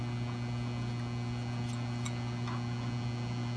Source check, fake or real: real